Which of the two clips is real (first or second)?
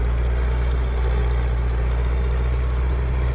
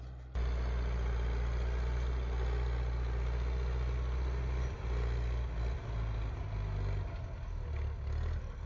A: second